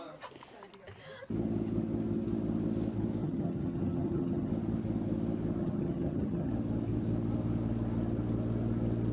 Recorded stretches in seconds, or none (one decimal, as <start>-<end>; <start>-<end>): 0.0-3.2; 4.5-5.6; 6.5-9.1